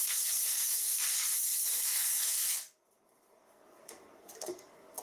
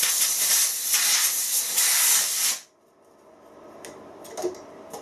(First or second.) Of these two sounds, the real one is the second